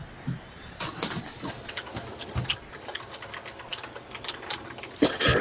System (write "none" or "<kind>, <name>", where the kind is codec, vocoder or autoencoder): none